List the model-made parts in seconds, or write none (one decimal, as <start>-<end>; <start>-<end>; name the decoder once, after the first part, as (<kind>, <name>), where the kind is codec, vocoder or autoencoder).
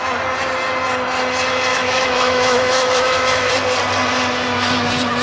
1.7-3.5 (autoencoder, DAC-VAE)